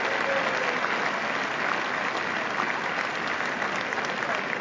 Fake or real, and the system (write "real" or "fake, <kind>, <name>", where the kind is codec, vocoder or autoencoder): real